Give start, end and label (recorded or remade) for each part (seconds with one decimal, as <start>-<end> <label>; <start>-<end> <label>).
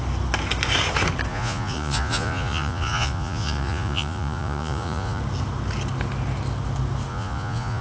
0.0-1.3 recorded; 1.3-5.2 remade; 5.2-7.1 recorded; 7.1-7.8 remade